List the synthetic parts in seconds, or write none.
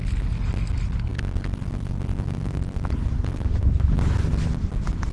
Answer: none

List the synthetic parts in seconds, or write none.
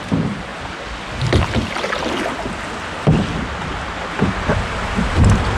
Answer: none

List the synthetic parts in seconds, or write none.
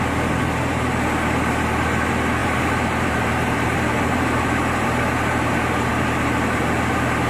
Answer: 2.4-5.5 (vocoder, BigVGAN v2); 5.9-6.6